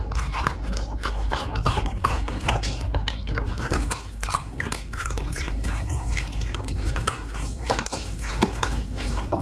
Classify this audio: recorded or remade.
remade